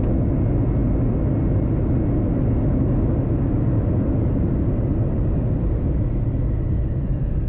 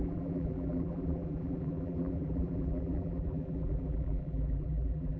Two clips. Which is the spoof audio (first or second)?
second